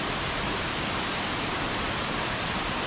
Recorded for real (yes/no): yes